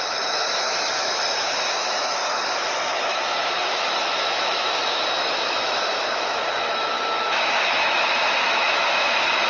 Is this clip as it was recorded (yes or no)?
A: no